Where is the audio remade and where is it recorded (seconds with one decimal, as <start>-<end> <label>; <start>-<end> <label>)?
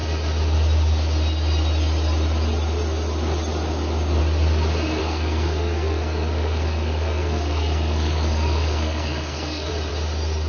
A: 0.0-5.0 recorded; 5.0-9.7 remade; 9.7-10.5 recorded